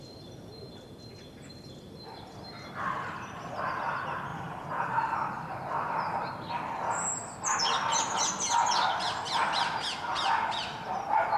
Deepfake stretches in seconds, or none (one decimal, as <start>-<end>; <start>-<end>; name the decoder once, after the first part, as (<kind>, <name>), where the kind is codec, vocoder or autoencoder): none